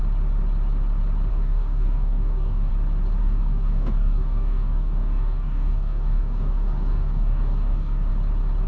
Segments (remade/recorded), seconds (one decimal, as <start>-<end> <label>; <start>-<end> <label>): 0.0-1.3 recorded; 1.3-2.7 remade; 2.7-3.2 recorded; 3.2-8.1 remade; 8.1-8.7 recorded